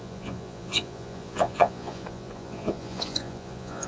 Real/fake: fake